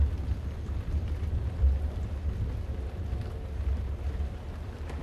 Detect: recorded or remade recorded